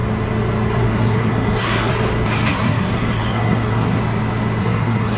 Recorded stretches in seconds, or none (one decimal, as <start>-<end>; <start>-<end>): 0.0-0.8; 1.9-2.5; 4.0-4.6